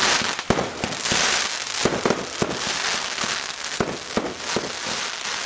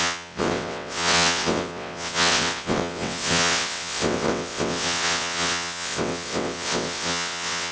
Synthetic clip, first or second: second